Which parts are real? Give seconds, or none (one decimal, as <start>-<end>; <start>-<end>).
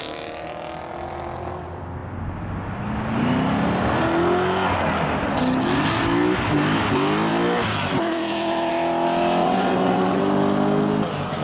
0.0-9.4; 10.2-11.4